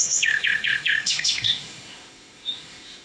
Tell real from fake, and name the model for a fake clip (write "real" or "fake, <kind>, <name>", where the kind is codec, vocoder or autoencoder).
fake, autoencoder, DAC-VAE